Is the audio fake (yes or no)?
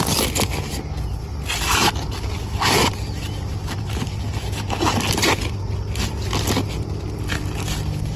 no